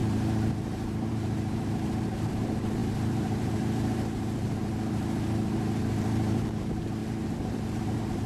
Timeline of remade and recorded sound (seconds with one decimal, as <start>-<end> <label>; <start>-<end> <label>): 0.0-8.3 remade